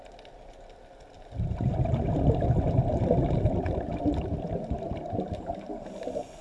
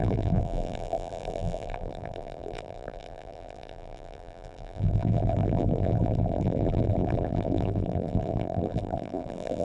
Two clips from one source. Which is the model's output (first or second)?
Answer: second